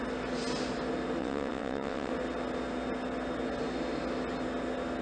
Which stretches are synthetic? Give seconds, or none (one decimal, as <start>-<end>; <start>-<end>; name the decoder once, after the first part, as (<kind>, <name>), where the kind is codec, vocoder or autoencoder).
1.2-2.1 (vocoder, WaveNeXt)